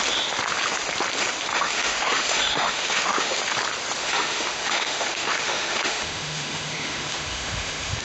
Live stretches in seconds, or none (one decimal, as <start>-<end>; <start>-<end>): 0.0-1.5; 3.4-4.0